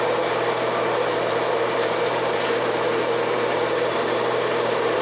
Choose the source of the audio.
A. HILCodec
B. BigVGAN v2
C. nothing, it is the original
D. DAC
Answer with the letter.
B